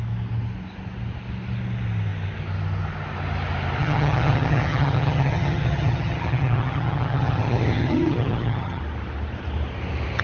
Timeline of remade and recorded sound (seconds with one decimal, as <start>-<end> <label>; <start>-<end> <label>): 0.0-3.8 recorded; 3.8-8.8 remade; 8.8-10.2 recorded

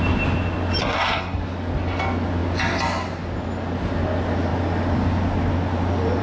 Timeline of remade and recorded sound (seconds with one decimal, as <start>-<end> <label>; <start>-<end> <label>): 0.0-0.8 recorded; 0.8-1.4 remade; 1.4-6.2 recorded